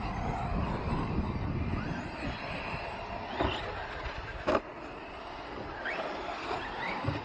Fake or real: real